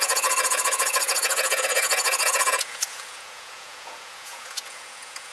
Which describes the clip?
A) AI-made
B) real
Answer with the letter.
A